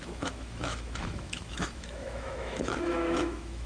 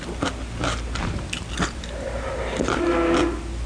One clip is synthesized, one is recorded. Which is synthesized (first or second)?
first